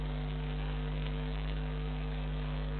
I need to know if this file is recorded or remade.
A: remade